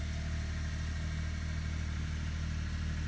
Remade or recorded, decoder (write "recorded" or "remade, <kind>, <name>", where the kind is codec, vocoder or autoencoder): recorded